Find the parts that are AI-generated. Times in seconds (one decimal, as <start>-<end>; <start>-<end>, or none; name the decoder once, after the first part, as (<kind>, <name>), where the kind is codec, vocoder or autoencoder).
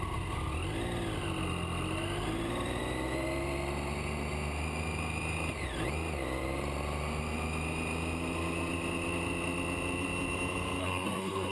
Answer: 10.8-11.5 (codec, SNAC)